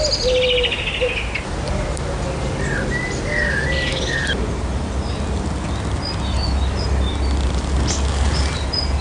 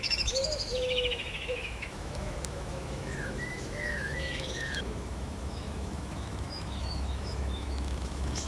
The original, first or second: first